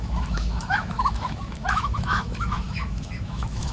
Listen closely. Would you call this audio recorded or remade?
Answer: remade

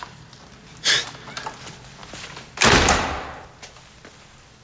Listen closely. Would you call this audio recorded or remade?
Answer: recorded